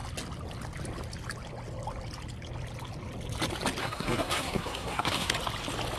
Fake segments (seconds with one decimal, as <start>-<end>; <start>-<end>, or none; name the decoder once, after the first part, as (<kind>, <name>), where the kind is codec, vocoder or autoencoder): 3.8-5.3 (codec, SNAC)